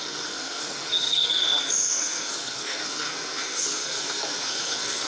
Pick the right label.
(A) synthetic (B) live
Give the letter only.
A